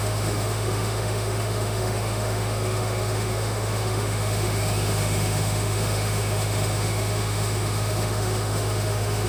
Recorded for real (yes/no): no